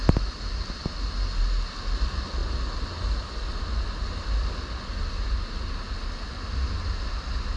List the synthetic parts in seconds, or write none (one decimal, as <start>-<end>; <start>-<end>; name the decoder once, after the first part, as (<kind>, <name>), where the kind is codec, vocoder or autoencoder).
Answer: none

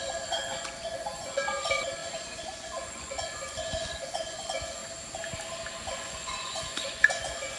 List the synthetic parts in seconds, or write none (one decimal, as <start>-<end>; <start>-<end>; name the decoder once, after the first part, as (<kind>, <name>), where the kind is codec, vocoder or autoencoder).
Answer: 0.0-4.8 (vocoder, Vocos); 5.8-7.6

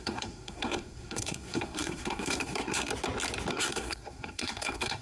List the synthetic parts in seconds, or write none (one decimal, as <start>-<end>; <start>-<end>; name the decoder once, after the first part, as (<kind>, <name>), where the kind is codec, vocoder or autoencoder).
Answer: 0.0-2.9 (codec, SNAC); 3.5-5.0

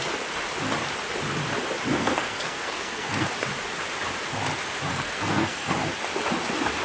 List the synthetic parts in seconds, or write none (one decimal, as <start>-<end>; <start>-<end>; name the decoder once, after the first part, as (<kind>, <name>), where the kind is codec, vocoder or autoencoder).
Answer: 1.9-3.3 (codec, SNAC); 4.9-5.8